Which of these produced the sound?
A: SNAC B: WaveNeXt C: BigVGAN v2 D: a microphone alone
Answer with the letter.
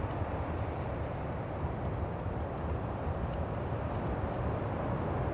C